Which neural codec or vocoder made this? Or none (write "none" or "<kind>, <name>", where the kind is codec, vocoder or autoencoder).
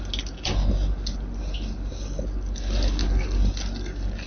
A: none